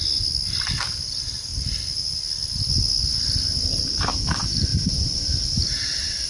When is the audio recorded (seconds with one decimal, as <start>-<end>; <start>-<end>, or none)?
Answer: 0.0-6.3